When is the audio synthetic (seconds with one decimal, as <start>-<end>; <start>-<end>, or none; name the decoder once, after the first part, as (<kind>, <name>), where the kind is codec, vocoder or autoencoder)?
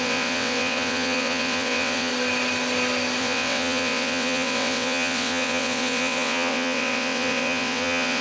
0.0-2.1 (vocoder, WaveNeXt); 3.2-8.2